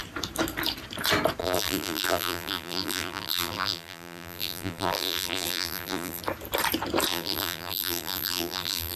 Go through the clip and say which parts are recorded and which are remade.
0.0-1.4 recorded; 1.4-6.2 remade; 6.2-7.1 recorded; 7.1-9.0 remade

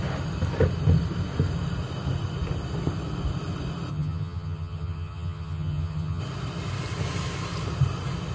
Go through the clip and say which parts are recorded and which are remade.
0.0-3.9 recorded; 3.9-6.2 remade; 6.2-8.3 recorded

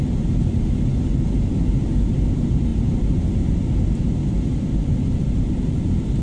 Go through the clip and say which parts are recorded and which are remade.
0.0-6.2 recorded

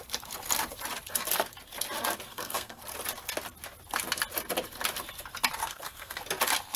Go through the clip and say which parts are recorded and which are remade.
0.0-2.3 recorded; 2.3-2.8 remade; 2.8-5.6 recorded; 5.6-6.2 remade; 6.2-6.8 recorded

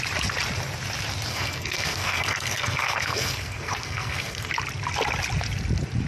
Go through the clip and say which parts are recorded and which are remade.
0.0-1.3 recorded; 1.3-4.5 remade; 4.5-6.1 recorded

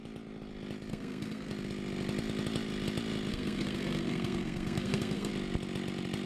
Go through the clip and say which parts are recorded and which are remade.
0.0-0.9 recorded; 0.9-1.5 remade; 1.5-3.3 recorded; 3.3-5.3 remade; 5.3-6.3 recorded

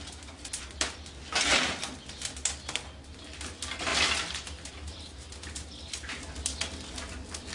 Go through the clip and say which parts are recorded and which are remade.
0.0-7.5 recorded